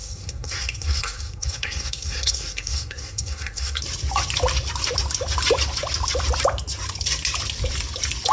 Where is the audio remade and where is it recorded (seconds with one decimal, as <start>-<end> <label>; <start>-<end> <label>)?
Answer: 0.0-3.8 remade; 3.8-8.3 recorded